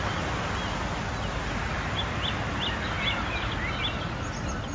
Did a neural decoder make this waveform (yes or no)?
no